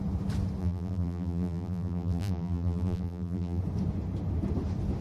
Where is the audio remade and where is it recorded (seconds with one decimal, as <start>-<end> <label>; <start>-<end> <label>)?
0.0-0.6 recorded; 0.6-3.6 remade; 3.6-5.0 recorded